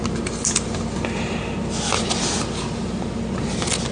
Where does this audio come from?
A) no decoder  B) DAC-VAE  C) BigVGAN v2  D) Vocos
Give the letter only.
A